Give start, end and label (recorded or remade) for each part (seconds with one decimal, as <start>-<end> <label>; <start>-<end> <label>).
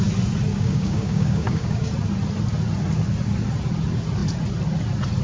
0.0-0.5 recorded; 0.5-1.9 remade; 1.9-5.2 recorded